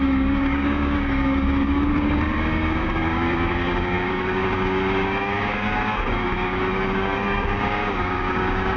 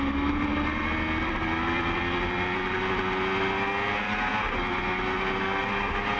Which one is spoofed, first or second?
first